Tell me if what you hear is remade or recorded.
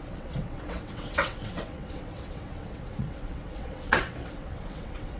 remade